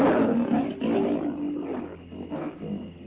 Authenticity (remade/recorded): recorded